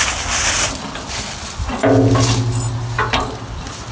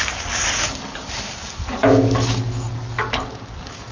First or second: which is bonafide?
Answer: first